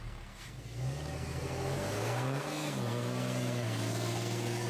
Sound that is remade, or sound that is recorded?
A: remade